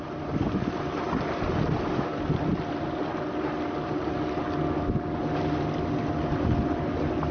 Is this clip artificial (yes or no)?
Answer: no